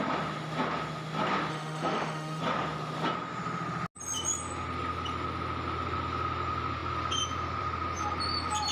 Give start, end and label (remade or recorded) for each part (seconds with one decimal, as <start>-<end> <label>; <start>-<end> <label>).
0.0-1.5 recorded; 1.5-2.4 remade; 2.4-8.7 recorded